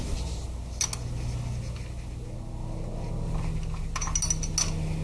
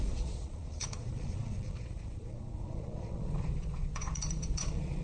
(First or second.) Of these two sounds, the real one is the first